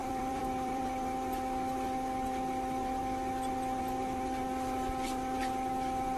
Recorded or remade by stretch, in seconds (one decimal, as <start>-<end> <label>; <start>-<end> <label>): 0.0-0.8 remade; 0.8-6.2 recorded